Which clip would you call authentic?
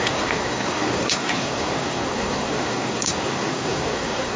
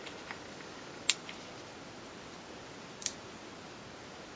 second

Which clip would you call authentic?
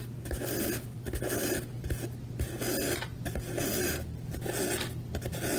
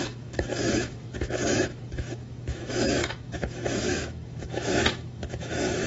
first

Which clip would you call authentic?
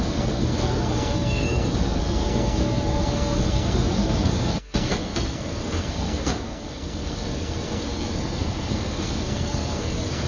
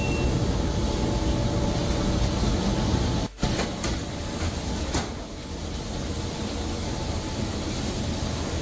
second